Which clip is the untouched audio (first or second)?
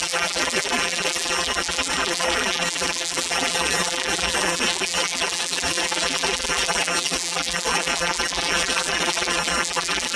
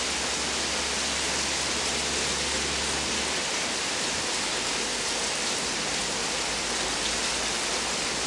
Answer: second